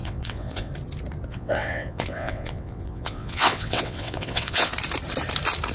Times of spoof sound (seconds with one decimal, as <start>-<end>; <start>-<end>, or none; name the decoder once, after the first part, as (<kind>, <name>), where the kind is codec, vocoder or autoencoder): 0.0-0.7 (vocoder, WaveNeXt); 1.3-4.7

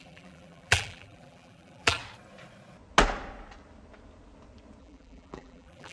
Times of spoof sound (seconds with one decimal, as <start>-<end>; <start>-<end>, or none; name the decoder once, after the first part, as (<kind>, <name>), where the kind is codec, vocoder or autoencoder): 0.0-2.0 (vocoder, BigVGAN v2); 4.8-5.9

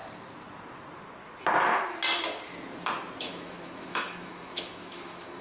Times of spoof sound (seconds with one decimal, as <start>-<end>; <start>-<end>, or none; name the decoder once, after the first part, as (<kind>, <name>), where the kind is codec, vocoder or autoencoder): 3.2-5.4 (autoencoder, DAC-VAE)

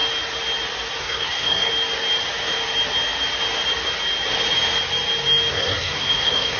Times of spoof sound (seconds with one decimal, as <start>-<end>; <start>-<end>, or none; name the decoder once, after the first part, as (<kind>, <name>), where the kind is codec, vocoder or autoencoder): 1.0-1.7 (codec, SNAC); 5.5-6.6

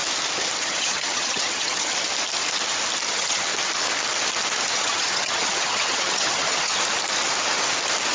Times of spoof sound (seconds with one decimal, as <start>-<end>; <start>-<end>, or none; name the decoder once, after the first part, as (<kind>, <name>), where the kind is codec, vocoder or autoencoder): 0.6-1.9 (vocoder, HiFi-GAN); 3.1-3.5; 4.7-6.8

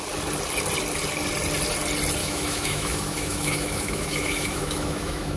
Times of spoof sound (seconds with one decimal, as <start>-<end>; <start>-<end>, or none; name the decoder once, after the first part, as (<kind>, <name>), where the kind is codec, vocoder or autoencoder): 2.2-5.4 (autoencoder, DAC-VAE)